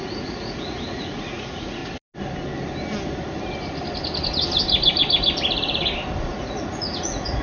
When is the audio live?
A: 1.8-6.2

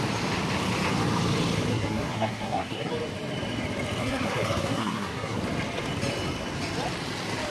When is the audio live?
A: 0.0-1.7; 2.9-4.0; 5.4-7.5

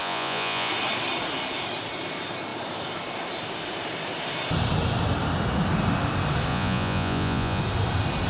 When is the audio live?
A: 0.7-6.5; 7.6-8.3

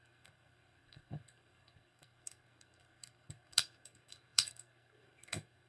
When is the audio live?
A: none

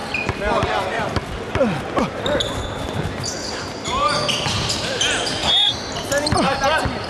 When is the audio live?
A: 0.0-7.1